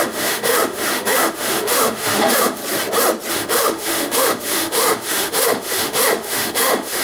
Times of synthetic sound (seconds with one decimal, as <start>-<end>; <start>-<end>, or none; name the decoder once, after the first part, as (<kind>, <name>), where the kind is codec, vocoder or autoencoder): 0.0-2.6 (autoencoder, DAC-VAE); 3.3-7.0